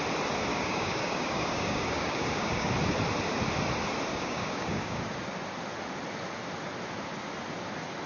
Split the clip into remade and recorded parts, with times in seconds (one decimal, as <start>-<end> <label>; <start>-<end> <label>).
0.0-0.5 recorded; 0.5-2.7 remade; 2.7-4.1 recorded; 4.1-5.0 remade; 5.0-8.1 recorded